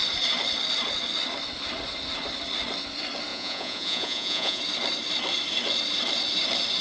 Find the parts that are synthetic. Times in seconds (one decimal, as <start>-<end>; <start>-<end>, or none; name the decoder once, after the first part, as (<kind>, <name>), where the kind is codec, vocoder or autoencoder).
3.3-4.6 (vocoder, Vocos)